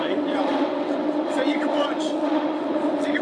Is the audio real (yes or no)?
no